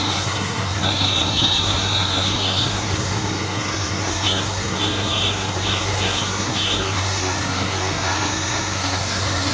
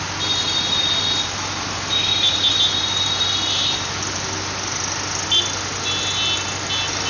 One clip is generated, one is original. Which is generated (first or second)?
first